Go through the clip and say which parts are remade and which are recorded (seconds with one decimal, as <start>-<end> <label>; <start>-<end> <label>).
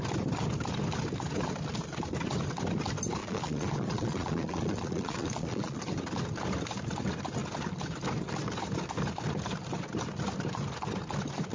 0.0-3.2 recorded; 3.2-5.8 remade; 5.8-11.5 recorded